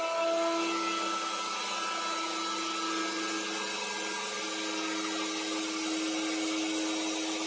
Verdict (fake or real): real